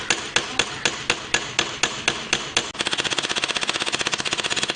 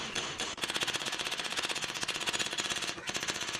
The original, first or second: first